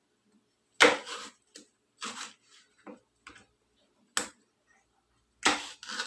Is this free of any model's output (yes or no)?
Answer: yes